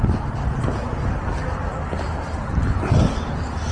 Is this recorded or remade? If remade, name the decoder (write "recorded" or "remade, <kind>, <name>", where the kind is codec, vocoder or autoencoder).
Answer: recorded